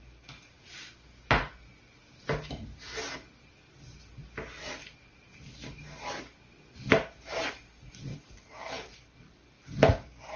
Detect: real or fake real